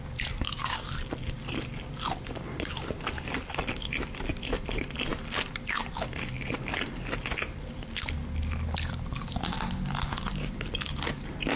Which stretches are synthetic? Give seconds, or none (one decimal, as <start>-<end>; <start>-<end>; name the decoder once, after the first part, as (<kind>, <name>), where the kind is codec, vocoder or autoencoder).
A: none